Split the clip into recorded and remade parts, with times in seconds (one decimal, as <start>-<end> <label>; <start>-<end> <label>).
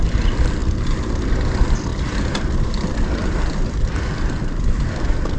0.0-5.4 recorded